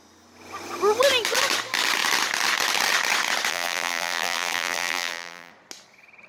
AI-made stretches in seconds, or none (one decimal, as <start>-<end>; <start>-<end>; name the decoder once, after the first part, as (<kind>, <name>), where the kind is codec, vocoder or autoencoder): 3.5-5.5 (vocoder, BigVGAN v2)